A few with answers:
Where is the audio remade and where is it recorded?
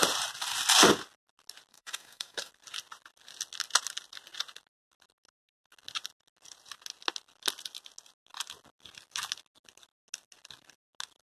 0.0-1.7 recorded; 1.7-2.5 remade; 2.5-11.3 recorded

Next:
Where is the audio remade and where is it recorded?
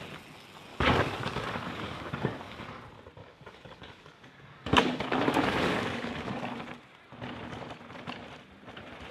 0.0-0.7 recorded; 0.7-2.8 remade; 2.8-3.2 recorded; 3.2-6.6 remade; 6.6-9.1 recorded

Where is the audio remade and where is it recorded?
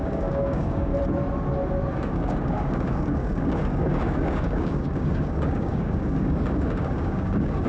0.0-0.9 remade; 0.9-1.9 recorded; 1.9-7.7 remade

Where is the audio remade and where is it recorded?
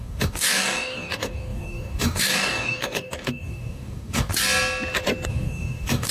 0.0-4.3 remade; 4.3-5.3 recorded; 5.3-6.1 remade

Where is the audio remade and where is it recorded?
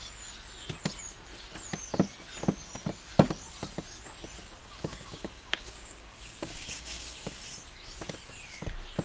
0.0-4.6 recorded; 4.6-7.3 remade; 7.3-9.0 recorded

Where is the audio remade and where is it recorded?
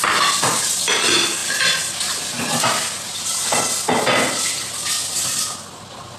0.0-6.2 recorded